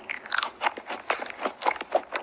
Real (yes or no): yes